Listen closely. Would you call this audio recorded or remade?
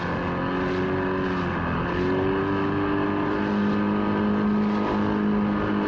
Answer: recorded